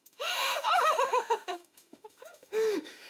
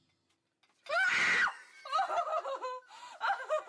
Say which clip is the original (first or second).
second